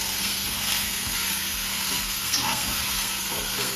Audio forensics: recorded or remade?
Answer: remade